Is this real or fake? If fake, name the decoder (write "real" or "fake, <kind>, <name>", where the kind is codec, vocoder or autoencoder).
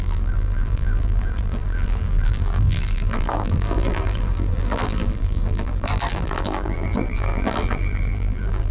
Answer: fake, vocoder, BigVGAN v2